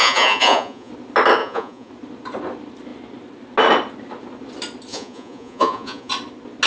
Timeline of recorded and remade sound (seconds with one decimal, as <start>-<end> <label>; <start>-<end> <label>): 0.0-0.9 remade; 0.9-1.4 recorded; 1.4-1.9 remade; 1.9-4.9 recorded; 4.9-6.1 remade; 6.1-6.7 recorded